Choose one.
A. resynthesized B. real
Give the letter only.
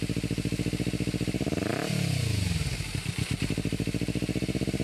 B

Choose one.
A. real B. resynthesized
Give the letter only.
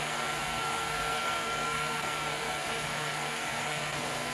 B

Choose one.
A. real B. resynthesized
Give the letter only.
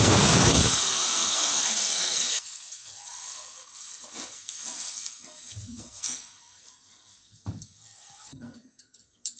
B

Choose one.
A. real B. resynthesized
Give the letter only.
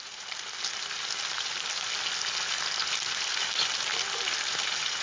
A